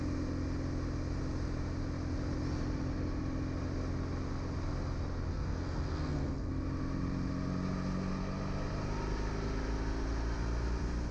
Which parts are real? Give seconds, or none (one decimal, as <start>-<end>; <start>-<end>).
0.0-5.3; 6.5-11.1

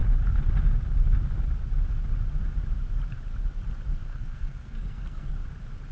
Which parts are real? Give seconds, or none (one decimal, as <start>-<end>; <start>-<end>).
0.0-4.1; 5.3-5.9

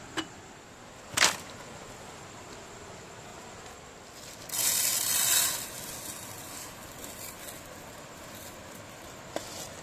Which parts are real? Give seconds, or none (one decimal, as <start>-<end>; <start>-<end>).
0.0-9.8

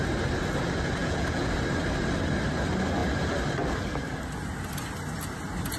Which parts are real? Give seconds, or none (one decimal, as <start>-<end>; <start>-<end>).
0.0-1.0; 1.5-5.8

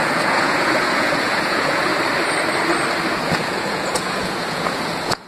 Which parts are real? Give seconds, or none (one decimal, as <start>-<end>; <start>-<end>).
1.9-3.2

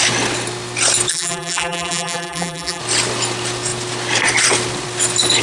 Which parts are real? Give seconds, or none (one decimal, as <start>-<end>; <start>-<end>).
0.0-1.1; 2.8-5.4